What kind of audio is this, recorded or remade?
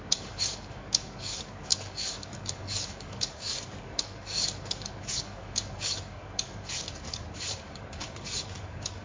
remade